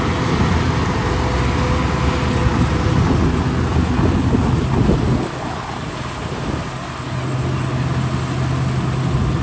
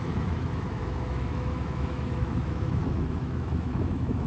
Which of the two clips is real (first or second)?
first